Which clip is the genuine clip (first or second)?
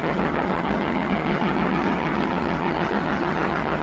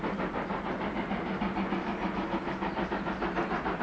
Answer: second